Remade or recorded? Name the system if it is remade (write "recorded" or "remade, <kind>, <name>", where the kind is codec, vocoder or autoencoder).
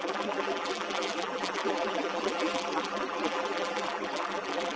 remade, vocoder, BigVGAN v2